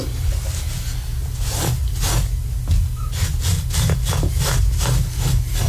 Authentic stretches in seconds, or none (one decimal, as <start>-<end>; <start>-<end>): 0.0-5.7